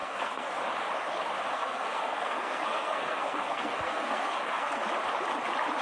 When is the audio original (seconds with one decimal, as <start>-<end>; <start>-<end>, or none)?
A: 0.5-1.5; 4.8-5.8